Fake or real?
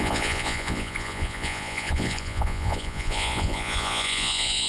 fake